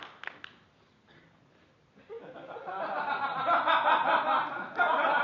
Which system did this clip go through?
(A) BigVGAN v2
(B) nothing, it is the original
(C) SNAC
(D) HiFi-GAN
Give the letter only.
B